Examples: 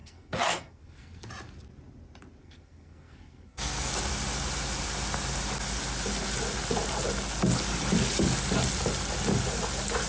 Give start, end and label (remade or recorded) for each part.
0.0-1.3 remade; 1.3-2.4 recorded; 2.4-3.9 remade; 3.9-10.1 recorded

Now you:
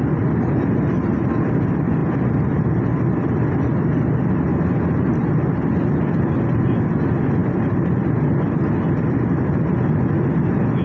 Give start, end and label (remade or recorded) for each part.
0.0-10.8 recorded

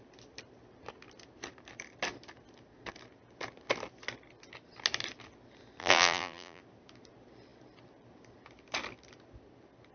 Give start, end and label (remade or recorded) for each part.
0.0-5.8 recorded; 5.8-6.6 remade; 6.6-9.9 recorded

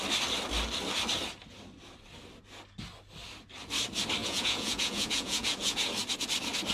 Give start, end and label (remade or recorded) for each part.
0.0-4.2 recorded; 4.2-5.9 remade; 5.9-6.7 recorded